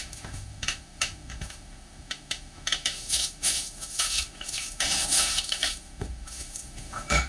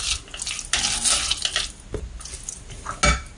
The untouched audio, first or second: second